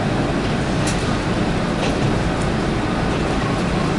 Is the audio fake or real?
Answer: real